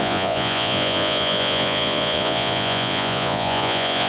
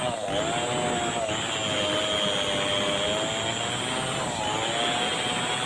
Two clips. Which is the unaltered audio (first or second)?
second